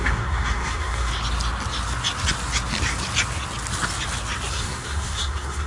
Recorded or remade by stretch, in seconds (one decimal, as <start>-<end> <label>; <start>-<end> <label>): 0.0-1.1 remade; 1.1-4.5 recorded; 4.5-5.7 remade